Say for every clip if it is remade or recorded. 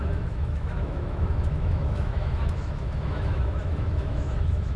remade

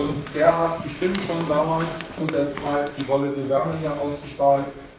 remade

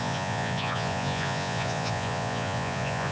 remade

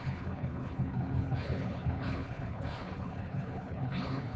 remade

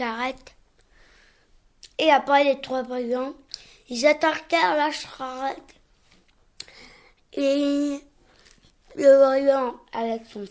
recorded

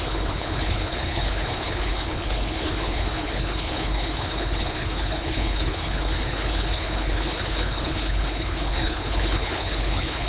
remade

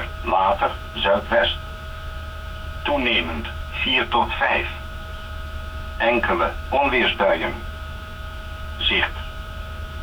remade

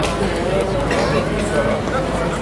recorded